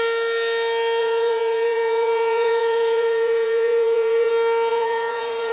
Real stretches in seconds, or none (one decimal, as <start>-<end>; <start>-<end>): 0.0-1.0; 4.3-4.7